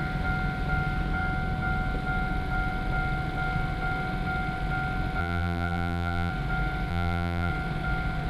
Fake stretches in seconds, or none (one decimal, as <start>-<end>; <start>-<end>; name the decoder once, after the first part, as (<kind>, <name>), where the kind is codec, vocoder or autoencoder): 5.2-6.3 (vocoder, BigVGAN v2); 6.9-7.5